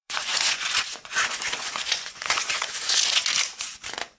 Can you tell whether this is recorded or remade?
remade